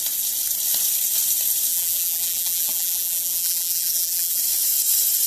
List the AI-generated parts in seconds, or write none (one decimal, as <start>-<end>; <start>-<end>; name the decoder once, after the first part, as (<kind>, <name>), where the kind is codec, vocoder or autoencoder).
1.7-4.4 (vocoder, BigVGAN v2)